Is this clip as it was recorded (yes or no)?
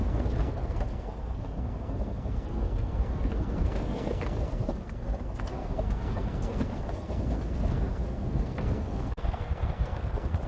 no